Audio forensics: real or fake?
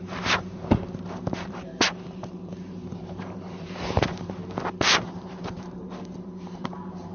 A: fake